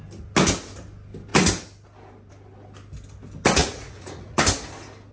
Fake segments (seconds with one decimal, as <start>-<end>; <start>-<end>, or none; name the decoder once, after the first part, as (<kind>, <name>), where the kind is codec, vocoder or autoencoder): 3.6-4.4 (vocoder, Vocos)